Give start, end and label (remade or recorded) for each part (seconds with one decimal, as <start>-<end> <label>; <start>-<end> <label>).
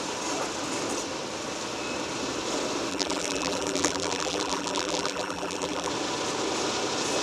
0.0-2.9 recorded; 2.9-5.9 remade; 5.9-7.2 recorded